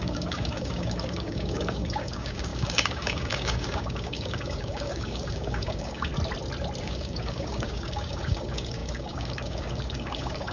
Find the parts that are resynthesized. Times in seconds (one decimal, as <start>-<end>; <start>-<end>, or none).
0.0-6.1; 6.8-10.5